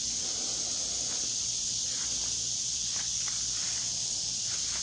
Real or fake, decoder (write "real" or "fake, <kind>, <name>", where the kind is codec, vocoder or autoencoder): real